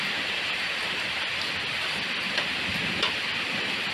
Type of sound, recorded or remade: recorded